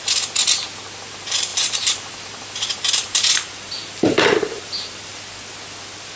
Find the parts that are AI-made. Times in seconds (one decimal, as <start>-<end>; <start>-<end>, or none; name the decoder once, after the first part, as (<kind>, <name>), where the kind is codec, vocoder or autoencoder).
1.5-5.2 (vocoder, BigVGAN v2)